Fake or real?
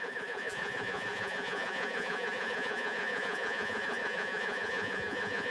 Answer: fake